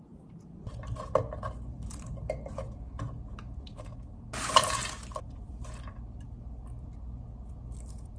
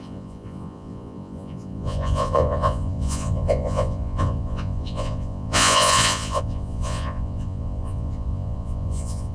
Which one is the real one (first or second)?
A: first